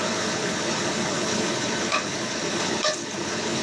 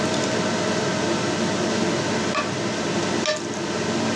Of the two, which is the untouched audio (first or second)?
second